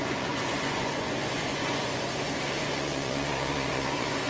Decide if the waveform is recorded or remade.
remade